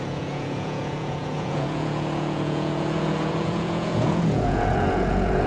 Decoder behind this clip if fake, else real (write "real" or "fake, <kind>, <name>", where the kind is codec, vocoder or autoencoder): fake, vocoder, Vocos